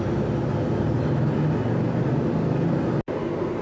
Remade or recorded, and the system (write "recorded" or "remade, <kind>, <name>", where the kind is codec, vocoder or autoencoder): recorded